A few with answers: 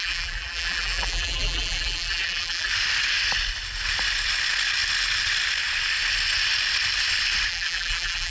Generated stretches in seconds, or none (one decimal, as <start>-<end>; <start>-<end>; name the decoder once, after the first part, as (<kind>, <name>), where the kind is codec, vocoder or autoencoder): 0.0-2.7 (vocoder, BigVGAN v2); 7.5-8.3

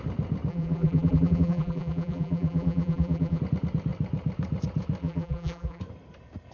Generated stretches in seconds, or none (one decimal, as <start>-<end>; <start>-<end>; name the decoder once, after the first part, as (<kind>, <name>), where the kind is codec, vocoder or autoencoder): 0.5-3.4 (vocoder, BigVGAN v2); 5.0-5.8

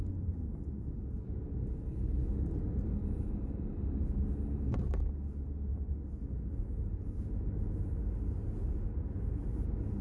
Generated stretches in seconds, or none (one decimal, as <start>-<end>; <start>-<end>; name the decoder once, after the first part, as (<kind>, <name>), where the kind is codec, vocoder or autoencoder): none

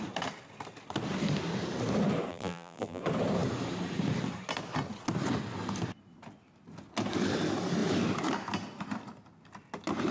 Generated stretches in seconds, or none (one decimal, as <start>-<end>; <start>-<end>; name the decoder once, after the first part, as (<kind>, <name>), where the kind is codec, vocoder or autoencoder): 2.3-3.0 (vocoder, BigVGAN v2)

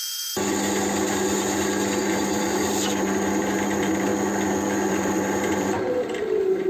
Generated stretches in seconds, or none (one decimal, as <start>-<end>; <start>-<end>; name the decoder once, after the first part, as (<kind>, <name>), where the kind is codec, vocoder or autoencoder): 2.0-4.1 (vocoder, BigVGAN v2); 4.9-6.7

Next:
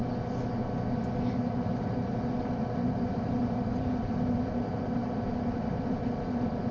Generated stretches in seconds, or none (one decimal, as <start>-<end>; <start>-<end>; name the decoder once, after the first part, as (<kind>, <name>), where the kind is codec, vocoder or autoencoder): 1.3-6.7 (vocoder, BigVGAN v2)